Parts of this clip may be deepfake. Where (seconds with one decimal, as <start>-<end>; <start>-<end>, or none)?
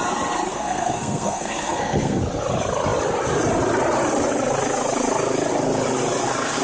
0.5-2.2